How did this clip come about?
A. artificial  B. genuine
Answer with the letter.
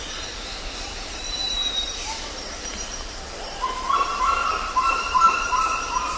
A